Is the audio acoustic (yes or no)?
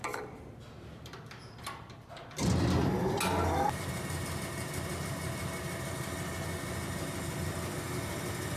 yes